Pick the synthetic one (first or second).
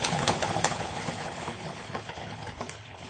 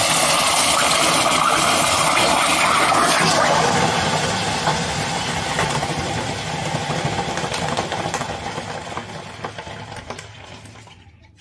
first